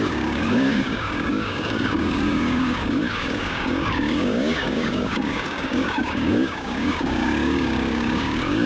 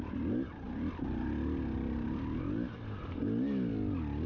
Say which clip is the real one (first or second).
second